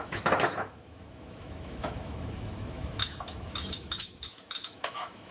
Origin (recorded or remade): remade